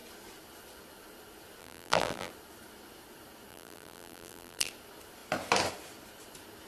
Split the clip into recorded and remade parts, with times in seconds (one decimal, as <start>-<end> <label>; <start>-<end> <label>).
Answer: 0.0-1.6 recorded; 1.6-2.3 remade; 2.3-3.5 recorded; 3.5-4.7 remade; 4.7-6.7 recorded